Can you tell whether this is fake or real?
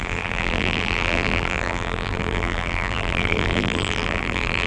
fake